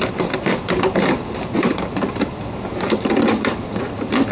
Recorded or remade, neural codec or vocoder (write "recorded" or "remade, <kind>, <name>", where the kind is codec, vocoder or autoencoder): remade, vocoder, BigVGAN v2